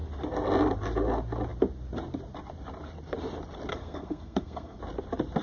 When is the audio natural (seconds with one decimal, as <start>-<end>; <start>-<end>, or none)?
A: 0.0-3.7; 4.8-5.4